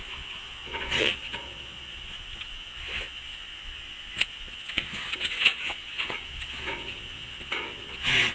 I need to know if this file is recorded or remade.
remade